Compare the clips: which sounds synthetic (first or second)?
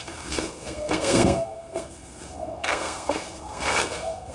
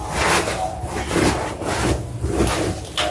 first